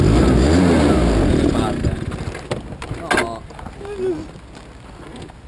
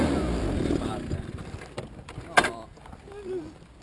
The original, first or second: first